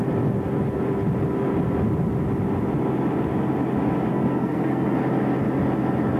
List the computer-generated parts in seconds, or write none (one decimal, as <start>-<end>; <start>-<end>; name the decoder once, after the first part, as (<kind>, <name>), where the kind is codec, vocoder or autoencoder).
4.1-5.0 (codec, SNAC)